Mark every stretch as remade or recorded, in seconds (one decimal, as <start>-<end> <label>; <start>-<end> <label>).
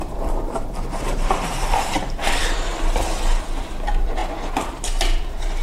0.0-2.7 remade; 2.7-3.6 recorded; 3.6-4.2 remade; 4.2-4.8 recorded; 4.8-5.6 remade